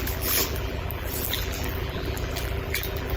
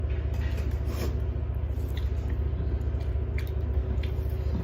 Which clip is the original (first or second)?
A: second